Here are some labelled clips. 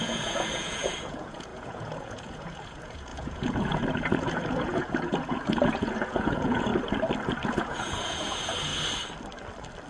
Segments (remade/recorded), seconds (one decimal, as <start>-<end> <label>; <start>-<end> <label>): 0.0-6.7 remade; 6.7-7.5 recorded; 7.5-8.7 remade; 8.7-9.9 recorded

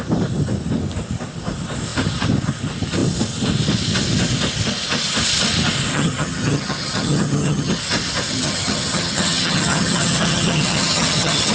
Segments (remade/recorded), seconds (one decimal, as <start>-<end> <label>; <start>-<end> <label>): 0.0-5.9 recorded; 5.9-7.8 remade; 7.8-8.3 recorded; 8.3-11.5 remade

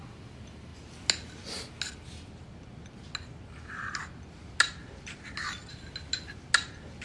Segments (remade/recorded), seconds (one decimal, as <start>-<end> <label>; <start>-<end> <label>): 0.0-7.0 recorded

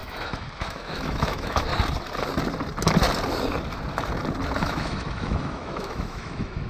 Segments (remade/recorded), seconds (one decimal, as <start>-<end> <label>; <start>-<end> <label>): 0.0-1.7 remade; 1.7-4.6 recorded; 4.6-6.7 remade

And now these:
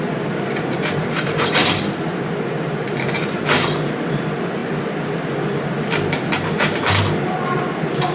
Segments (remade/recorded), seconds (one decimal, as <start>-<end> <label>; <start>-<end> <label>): 0.0-8.1 recorded

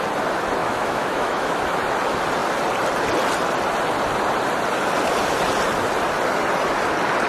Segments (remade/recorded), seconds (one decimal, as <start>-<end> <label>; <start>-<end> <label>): 0.0-0.6 recorded; 0.6-1.6 remade; 1.6-7.3 recorded

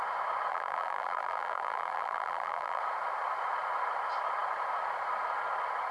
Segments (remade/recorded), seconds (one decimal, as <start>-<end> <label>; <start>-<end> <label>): 0.0-0.5 recorded; 0.5-2.8 remade; 2.8-5.9 recorded

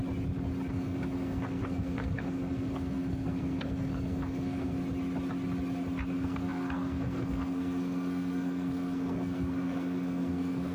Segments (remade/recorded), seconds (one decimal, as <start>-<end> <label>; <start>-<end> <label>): 0.0-0.7 recorded; 0.7-4.8 remade; 4.8-6.1 recorded; 6.1-10.7 remade